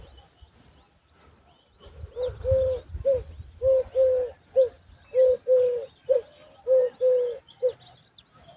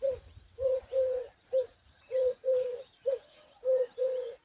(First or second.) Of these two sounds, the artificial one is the second